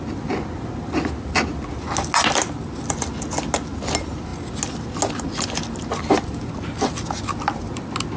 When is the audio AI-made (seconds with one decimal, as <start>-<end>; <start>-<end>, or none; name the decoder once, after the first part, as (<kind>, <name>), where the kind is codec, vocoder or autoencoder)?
none